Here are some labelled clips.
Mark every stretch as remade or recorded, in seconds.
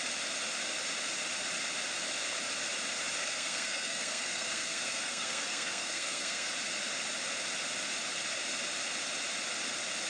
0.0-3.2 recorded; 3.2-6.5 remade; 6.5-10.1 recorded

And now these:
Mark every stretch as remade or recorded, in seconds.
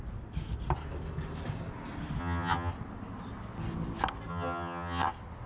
0.0-2.2 recorded; 2.2-2.7 remade; 2.7-4.3 recorded; 4.3-5.1 remade; 5.1-5.5 recorded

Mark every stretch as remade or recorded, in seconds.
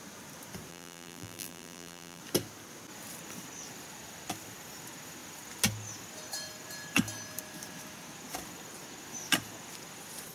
0.0-0.7 recorded; 0.7-2.2 remade; 2.2-10.3 recorded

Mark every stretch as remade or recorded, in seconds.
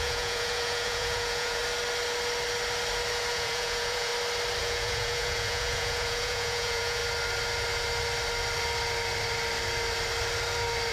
0.0-1.6 remade; 1.6-3.3 recorded; 3.3-4.1 remade; 4.1-4.6 recorded; 4.6-7.0 remade; 7.0-10.9 recorded